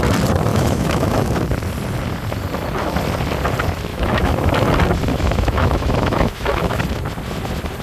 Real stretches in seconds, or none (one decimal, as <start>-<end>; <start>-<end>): 0.0-0.5; 1.3-3.9; 4.5-5.1; 6.8-7.8

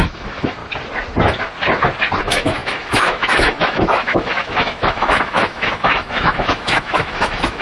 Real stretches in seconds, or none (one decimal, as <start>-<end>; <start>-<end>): 0.6-2.2

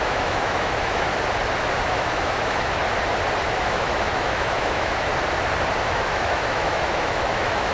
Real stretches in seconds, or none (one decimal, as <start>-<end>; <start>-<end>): 1.1-1.7; 2.8-3.4; 5.1-5.8

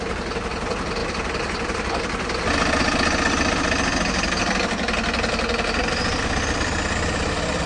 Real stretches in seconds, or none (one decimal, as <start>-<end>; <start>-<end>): 0.0-7.7